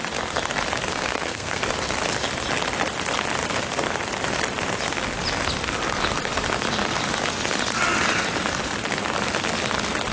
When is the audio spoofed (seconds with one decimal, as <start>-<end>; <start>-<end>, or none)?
0.9-1.6